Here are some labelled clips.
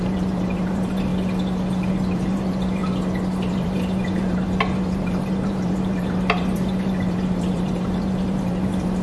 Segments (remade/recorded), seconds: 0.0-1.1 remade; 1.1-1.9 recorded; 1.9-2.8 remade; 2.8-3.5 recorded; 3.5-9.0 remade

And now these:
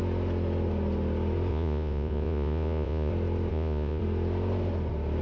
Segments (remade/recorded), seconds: 0.0-1.5 recorded; 1.5-3.1 remade; 3.1-3.5 recorded; 3.5-4.0 remade; 4.0-5.2 recorded

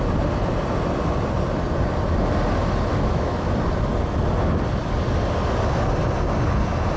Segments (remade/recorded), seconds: 0.0-2.9 recorded; 2.9-3.5 remade; 3.5-7.0 recorded

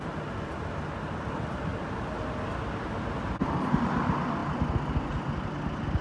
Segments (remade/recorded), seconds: 0.0-6.0 recorded

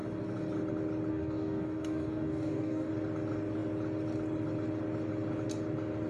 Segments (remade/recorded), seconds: 0.0-1.1 recorded; 1.1-2.9 remade; 2.9-6.1 recorded

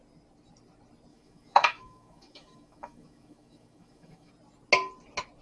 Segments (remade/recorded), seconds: 0.0-1.1 recorded; 1.1-4.3 remade; 4.3-5.4 recorded

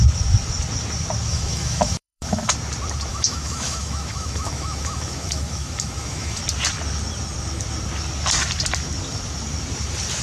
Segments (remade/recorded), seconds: 0.0-1.3 recorded; 1.3-2.5 remade; 2.5-3.1 recorded; 3.1-6.4 remade; 6.4-10.2 recorded

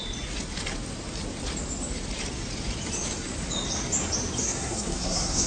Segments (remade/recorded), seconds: 0.0-4.4 recorded; 4.4-5.5 remade